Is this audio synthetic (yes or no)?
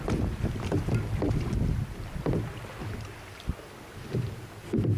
no